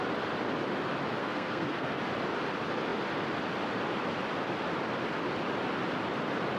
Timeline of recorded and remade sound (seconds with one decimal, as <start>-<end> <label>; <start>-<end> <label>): 0.0-1.2 recorded; 1.2-2.0 remade; 2.0-6.6 recorded